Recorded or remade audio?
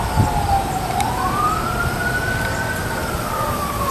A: recorded